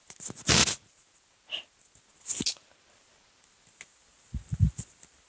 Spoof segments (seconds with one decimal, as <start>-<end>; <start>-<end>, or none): none